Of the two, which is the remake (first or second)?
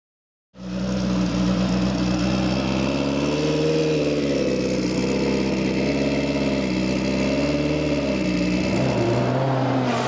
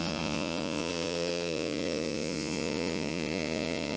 second